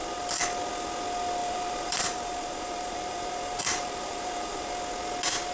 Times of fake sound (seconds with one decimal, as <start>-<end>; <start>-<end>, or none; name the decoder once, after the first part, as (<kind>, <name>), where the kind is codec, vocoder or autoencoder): 1.4-4.7 (vocoder, BigVGAN v2)

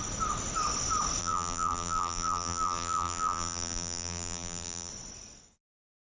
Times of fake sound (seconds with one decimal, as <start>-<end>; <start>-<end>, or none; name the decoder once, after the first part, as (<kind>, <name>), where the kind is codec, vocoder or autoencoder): 1.2-4.9 (vocoder, BigVGAN v2)